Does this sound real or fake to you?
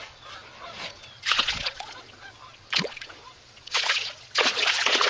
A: fake